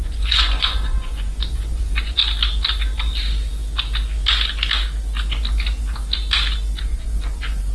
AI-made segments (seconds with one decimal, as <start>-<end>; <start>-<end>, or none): 0.0-2.2; 6.8-7.7